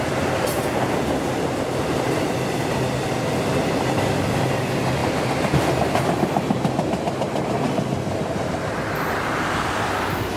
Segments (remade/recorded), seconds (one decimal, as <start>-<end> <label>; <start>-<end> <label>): 0.0-5.0 recorded; 5.0-5.6 remade; 5.6-10.4 recorded